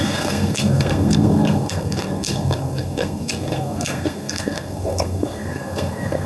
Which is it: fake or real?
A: fake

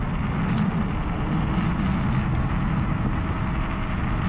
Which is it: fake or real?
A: real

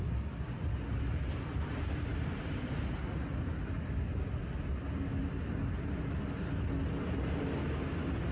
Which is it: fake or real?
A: real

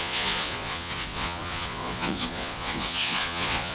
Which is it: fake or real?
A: fake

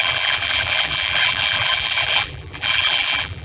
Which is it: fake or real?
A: fake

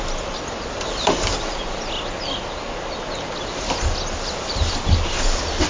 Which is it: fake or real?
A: real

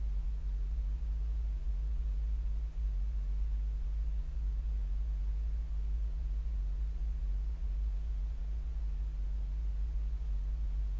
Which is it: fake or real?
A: fake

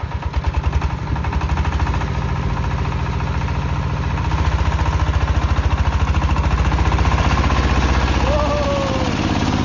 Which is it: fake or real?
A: real